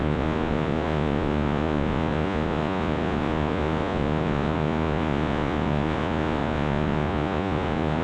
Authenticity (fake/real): fake